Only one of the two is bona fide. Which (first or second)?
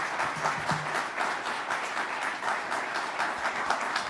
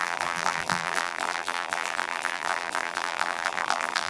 first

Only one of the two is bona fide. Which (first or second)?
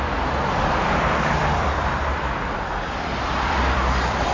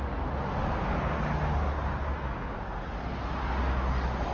second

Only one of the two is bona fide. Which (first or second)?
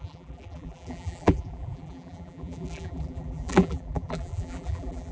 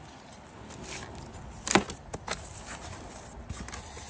second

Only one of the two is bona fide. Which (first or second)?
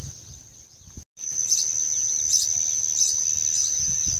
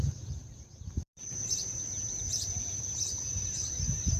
first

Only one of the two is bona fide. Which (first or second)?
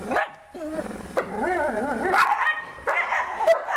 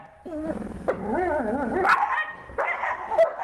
second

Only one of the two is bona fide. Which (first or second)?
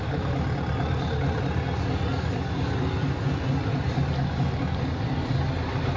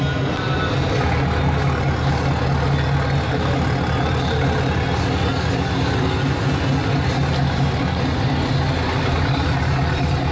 second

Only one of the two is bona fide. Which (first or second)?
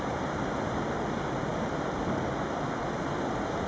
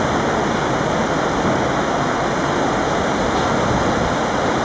second